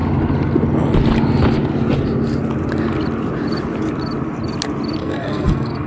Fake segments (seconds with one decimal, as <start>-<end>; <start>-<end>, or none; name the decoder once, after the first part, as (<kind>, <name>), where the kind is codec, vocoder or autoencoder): 5.0-5.9 (codec, SNAC)